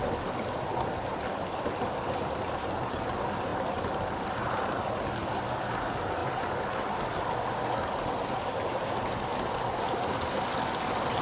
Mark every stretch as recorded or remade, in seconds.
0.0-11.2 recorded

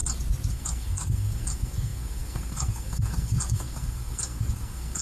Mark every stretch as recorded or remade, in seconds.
0.0-0.5 recorded; 0.5-5.0 remade

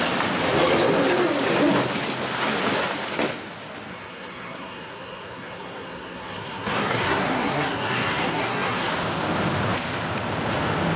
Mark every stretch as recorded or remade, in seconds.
0.0-3.9 recorded; 3.9-8.9 remade; 8.9-11.0 recorded

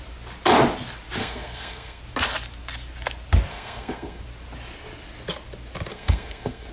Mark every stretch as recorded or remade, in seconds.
0.0-1.2 recorded; 1.2-2.0 remade; 2.0-3.5 recorded; 3.5-4.2 remade; 4.2-5.9 recorded; 5.9-6.7 remade

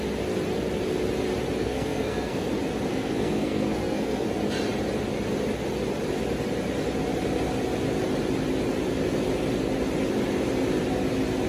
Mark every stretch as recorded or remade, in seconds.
0.0-1.6 recorded; 1.6-2.5 remade; 2.5-2.9 recorded; 2.9-4.3 remade; 4.3-11.5 recorded